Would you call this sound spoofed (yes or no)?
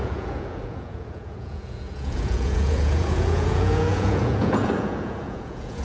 yes